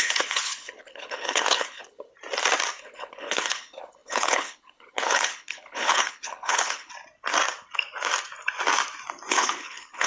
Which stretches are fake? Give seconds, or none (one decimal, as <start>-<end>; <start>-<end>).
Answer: 0.0-2.1; 2.8-6.9; 9.3-10.1